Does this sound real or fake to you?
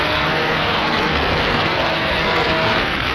fake